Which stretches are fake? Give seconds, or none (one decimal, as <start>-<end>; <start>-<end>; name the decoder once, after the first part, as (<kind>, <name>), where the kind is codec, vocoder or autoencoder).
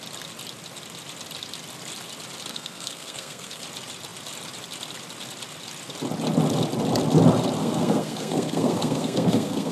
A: 2.5-3.6 (codec, SNAC); 7.6-9.7